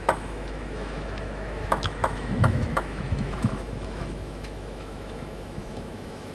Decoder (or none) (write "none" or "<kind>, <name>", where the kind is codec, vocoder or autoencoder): autoencoder, DAC-VAE